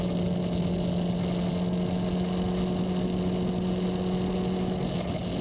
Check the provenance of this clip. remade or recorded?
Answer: recorded